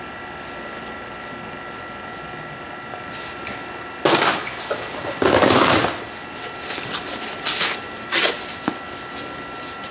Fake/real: real